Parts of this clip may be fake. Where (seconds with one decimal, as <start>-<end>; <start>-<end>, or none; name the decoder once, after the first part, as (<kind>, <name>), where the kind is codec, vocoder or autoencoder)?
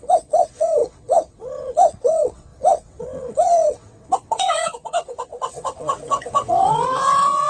0.0-7.5 (vocoder, WaveNeXt)